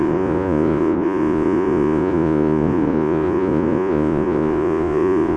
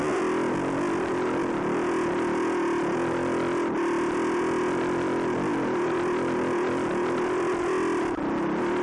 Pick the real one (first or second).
second